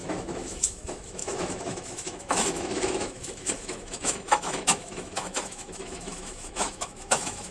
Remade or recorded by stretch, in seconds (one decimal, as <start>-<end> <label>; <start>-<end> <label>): 0.0-7.5 remade